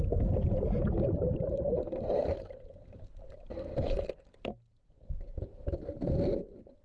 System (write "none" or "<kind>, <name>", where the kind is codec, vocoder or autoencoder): vocoder, BigVGAN v2